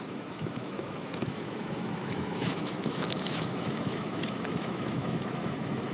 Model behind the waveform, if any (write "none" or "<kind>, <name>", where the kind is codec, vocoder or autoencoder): autoencoder, DAC-VAE